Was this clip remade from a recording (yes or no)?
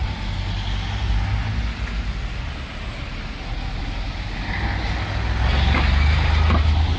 no